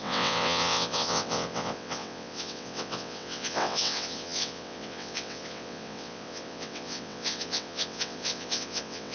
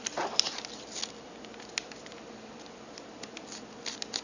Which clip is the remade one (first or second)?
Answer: first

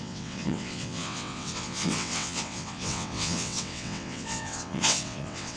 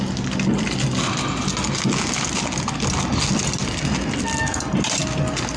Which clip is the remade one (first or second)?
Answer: first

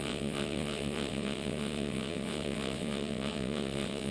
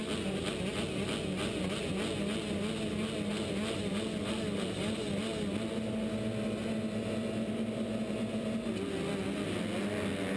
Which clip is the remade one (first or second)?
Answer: first